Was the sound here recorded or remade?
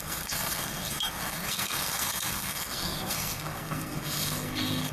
remade